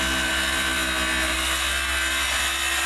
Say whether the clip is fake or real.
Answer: real